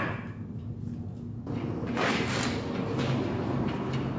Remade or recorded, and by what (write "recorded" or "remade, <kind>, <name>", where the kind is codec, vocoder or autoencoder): recorded